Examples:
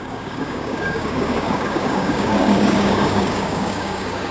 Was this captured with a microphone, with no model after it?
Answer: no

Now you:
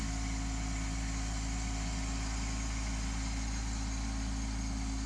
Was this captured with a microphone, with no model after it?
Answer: yes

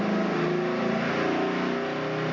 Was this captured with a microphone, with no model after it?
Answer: yes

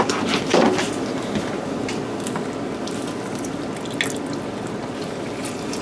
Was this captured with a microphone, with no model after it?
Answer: yes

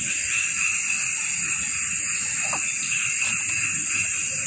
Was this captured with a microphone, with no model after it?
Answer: yes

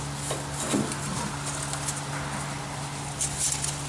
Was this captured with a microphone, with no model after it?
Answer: yes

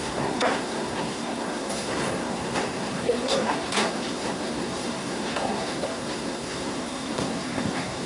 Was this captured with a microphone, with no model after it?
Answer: no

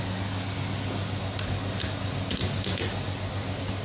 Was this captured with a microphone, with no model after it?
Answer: yes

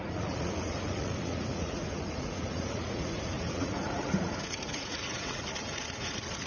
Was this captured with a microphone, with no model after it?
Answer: no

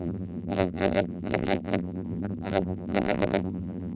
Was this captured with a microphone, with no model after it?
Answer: no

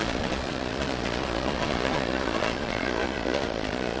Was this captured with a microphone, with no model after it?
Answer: no